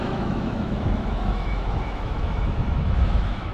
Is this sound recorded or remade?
remade